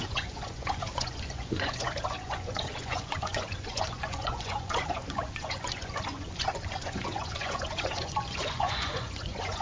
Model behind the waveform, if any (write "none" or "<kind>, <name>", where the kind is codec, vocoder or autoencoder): vocoder, Vocos